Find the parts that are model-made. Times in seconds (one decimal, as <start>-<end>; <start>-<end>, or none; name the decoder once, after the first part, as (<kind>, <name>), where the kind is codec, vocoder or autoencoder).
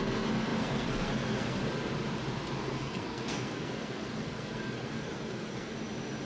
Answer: 0.0-1.6 (codec, SNAC); 2.6-5.7